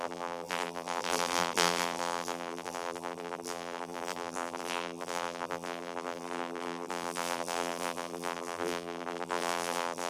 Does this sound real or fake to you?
fake